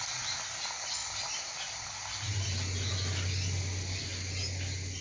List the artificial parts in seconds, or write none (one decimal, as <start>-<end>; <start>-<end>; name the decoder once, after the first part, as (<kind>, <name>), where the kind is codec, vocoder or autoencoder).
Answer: none